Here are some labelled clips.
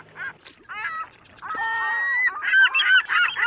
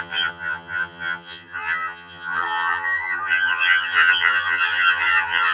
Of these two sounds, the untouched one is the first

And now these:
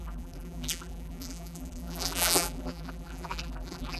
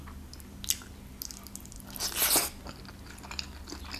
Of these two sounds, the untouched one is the second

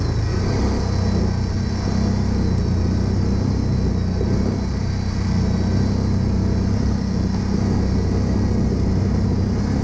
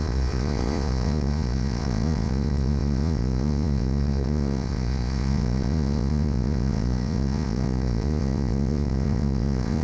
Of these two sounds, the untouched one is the first